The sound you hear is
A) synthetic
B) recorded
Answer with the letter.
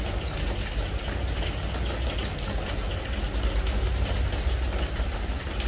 B